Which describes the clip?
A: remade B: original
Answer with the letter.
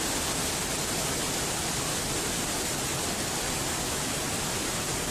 B